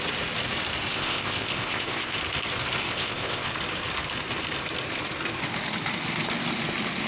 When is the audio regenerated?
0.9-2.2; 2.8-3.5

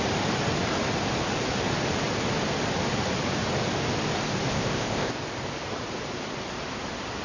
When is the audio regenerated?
4.5-5.1

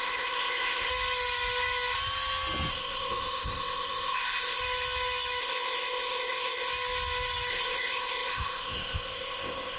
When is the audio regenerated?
0.0-0.9; 2.7-4.6; 5.4-6.7; 7.5-9.8

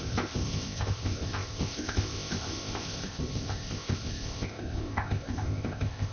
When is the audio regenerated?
0.0-6.1

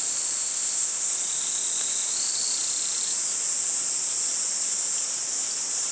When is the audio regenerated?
0.4-1.1